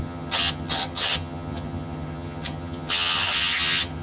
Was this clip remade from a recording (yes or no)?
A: yes